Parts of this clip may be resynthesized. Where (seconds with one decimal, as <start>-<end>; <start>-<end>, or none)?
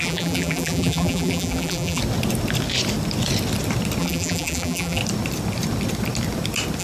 0.0-2.0; 4.0-5.0